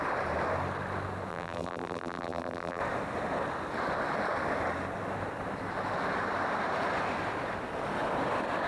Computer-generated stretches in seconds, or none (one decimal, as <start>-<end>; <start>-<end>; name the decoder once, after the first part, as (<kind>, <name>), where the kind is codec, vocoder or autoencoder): 1.3-2.8 (vocoder, BigVGAN v2)